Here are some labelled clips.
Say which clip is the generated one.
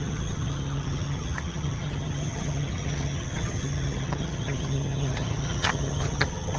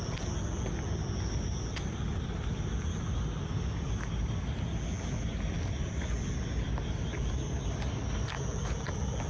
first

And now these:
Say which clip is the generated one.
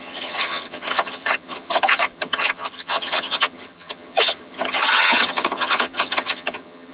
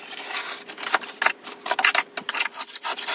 first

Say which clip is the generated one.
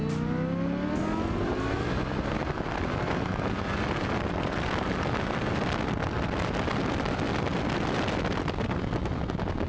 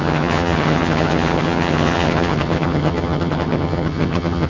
second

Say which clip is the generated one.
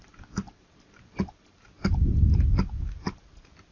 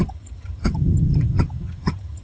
second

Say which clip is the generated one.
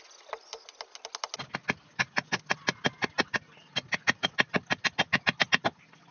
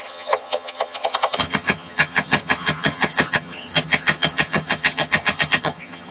second